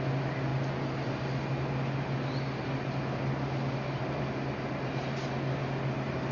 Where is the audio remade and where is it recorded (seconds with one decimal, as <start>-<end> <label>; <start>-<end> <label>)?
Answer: 0.0-6.3 recorded